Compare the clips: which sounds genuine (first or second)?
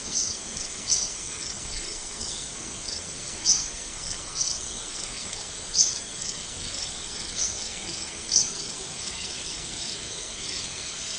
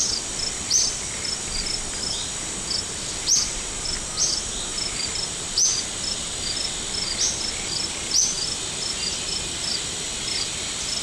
second